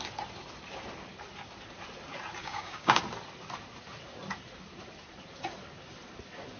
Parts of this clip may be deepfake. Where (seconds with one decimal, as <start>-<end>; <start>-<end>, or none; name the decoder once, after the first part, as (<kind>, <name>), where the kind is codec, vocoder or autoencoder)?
2.4-3.0 (codec, DAC)